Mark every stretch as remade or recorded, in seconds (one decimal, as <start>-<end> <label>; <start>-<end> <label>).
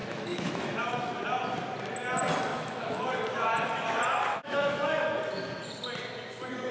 0.0-1.2 remade; 1.2-2.5 recorded; 2.5-3.1 remade; 3.1-4.3 recorded; 4.3-5.2 remade; 5.2-6.7 recorded